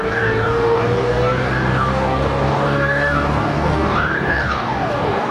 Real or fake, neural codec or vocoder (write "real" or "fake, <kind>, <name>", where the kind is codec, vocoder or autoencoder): fake, codec, DAC